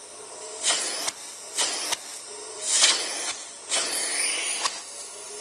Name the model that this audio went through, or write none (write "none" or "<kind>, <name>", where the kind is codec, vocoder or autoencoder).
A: none